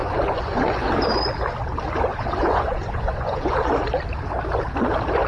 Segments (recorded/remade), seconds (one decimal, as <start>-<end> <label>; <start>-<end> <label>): 0.0-1.0 remade; 1.0-2.1 recorded; 2.1-3.7 remade; 3.7-5.3 recorded

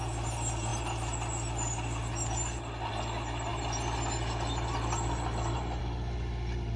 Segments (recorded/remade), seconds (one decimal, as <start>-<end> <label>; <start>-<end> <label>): 0.0-6.8 recorded

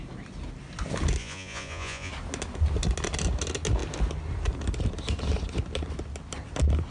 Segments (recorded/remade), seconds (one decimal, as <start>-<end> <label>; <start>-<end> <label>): 0.0-1.2 recorded; 1.2-2.1 remade; 2.1-6.9 recorded